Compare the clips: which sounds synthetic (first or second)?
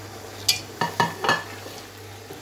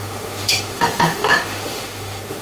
second